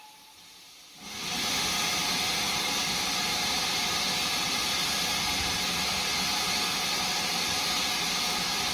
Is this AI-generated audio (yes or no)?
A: no